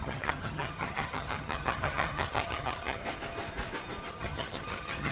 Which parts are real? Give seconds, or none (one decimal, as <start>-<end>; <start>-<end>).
3.0-4.1